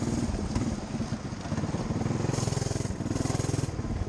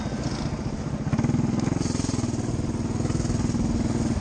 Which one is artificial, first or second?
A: first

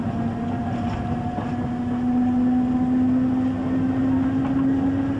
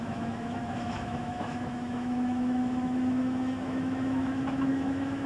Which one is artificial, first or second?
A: second